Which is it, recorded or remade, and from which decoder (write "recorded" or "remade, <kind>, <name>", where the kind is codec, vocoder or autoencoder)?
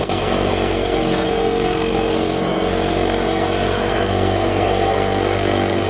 remade, codec, SNAC